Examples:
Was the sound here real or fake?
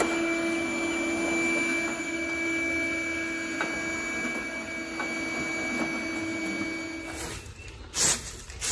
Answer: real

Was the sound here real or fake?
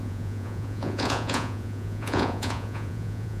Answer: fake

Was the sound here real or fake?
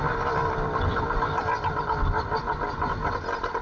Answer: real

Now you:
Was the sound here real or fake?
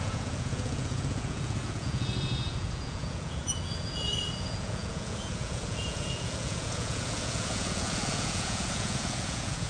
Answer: fake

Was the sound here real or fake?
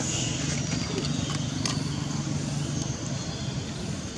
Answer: real